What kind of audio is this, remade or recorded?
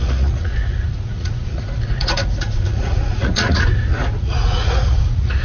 remade